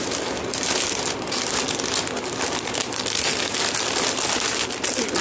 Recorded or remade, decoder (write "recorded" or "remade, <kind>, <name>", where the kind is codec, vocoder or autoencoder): recorded